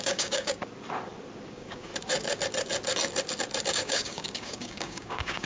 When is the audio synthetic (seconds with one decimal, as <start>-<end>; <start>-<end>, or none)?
0.0-0.6; 1.5-1.9; 3.7-5.5